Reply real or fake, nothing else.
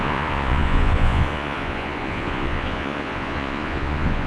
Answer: fake